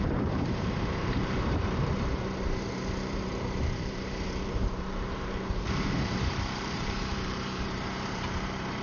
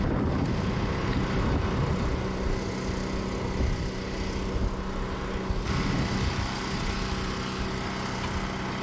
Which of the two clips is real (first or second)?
second